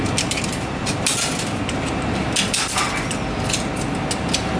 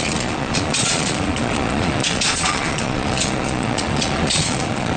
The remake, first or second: second